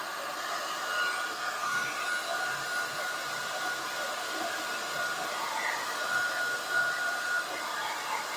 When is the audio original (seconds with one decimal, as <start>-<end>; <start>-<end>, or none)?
0.0-1.3; 1.8-8.4